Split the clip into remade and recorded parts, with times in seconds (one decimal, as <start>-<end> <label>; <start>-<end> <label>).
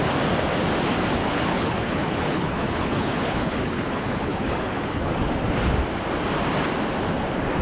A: 0.0-1.2 recorded; 1.2-5.3 remade; 5.3-7.6 recorded